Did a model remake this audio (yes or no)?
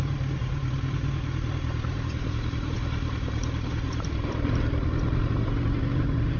yes